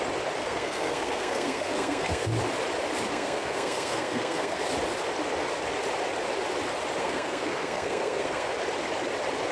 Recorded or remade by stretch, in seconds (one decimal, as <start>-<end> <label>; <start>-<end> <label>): 0.0-0.4 recorded; 0.4-2.3 remade; 2.3-3.1 recorded; 3.1-4.6 remade; 4.6-7.0 recorded; 7.0-8.5 remade; 8.5-9.5 recorded